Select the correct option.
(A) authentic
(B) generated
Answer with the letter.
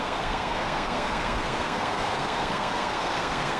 B